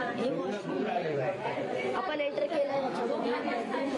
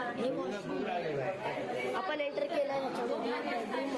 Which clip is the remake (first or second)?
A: first